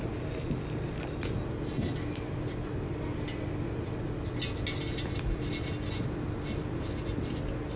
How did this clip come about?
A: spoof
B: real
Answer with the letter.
B